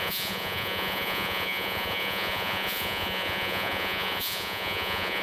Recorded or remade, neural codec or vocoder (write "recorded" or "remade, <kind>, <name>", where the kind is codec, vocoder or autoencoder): remade, vocoder, Vocos